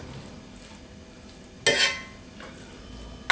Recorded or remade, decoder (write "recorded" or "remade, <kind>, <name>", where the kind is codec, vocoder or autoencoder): recorded